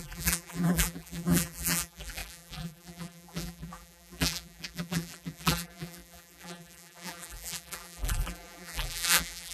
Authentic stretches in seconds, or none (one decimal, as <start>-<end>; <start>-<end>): none